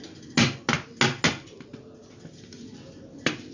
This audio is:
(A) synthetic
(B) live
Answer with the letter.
B